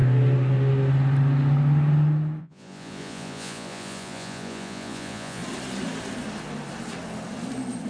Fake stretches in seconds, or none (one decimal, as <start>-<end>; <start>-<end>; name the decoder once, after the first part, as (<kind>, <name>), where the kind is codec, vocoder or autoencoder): 2.4-5.4 (vocoder, Vocos)